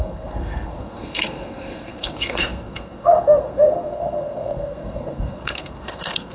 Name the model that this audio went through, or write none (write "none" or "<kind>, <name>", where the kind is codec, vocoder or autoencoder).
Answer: codec, SNAC